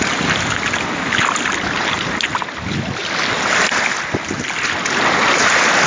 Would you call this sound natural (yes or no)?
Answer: yes